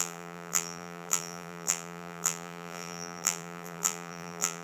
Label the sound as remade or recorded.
remade